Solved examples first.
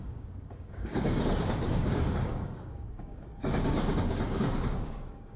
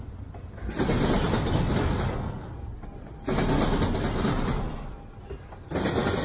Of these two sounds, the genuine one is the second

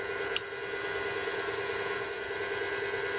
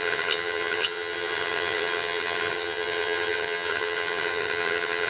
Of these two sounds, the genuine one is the first